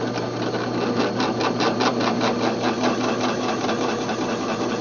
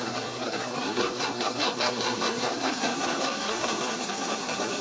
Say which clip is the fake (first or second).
second